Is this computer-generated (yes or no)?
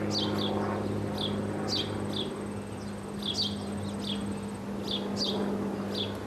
no